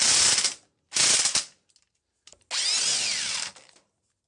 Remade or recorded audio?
recorded